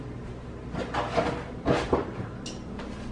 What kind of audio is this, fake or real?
real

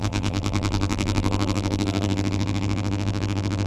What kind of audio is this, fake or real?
fake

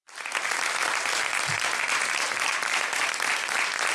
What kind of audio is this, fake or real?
real